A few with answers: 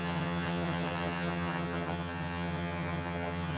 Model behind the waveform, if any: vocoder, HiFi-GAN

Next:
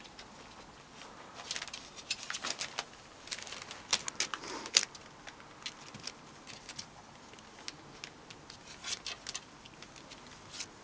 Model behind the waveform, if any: none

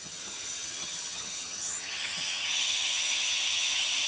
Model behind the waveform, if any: vocoder, HiFi-GAN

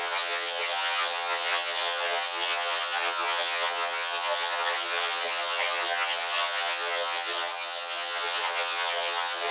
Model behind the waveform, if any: vocoder, HiFi-GAN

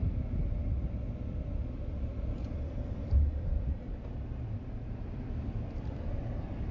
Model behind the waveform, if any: none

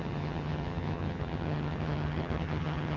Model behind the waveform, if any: vocoder, HiFi-GAN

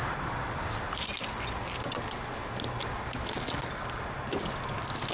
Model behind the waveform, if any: none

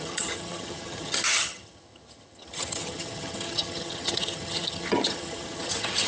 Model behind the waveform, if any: vocoder, HiFi-GAN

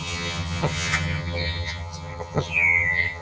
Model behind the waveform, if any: vocoder, HiFi-GAN